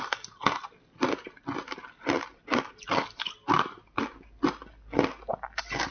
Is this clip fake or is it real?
real